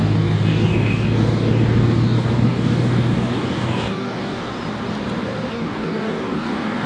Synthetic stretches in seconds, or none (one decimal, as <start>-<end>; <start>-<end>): 0.0-4.5; 5.5-6.9